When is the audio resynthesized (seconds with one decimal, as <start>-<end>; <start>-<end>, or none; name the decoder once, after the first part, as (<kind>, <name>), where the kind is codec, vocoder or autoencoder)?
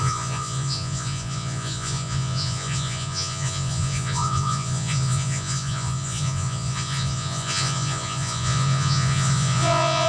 0.0-10.1 (vocoder, Vocos)